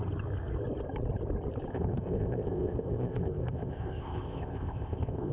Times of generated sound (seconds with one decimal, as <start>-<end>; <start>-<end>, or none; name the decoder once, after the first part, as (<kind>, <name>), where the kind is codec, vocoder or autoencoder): 1.7-5.3 (codec, ZipCodec)